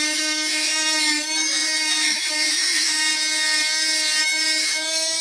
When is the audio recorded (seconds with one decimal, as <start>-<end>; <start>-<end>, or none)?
3.1-4.2